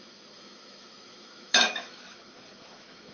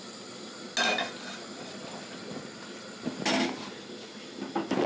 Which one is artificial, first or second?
first